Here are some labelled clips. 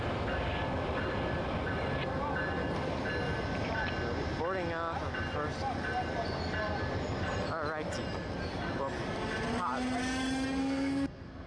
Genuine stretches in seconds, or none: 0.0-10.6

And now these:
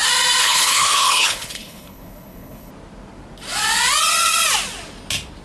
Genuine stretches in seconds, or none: 0.0-0.4; 2.7-5.4

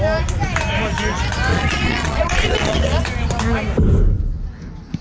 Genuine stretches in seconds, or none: 0.0-1.5; 3.0-5.0

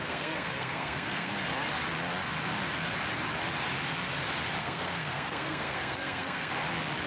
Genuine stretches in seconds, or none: 1.3-4.6; 6.5-7.1

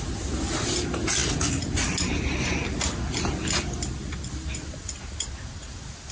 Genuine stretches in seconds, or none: 0.0-6.1

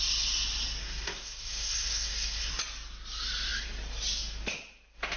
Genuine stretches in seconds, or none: 0.0-0.8; 2.5-5.2

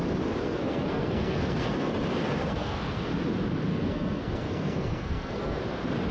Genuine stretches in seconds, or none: 0.0-0.4; 1.9-2.4; 3.1-3.7; 5.6-6.1

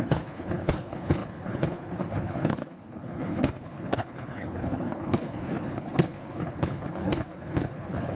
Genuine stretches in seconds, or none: none